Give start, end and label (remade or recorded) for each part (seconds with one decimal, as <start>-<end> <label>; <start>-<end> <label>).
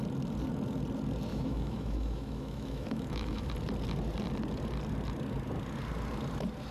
0.0-1.3 recorded; 1.3-3.5 remade; 3.5-6.7 recorded